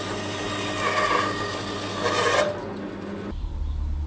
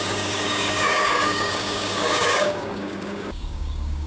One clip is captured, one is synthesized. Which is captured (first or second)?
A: first